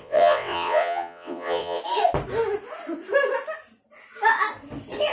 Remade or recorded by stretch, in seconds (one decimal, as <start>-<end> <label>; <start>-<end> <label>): 0.0-1.8 remade; 1.8-5.1 recorded